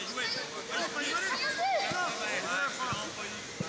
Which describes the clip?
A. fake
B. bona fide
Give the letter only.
B